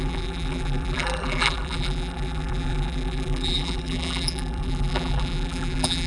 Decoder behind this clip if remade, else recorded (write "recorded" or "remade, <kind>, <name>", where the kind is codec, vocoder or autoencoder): remade, vocoder, BigVGAN v2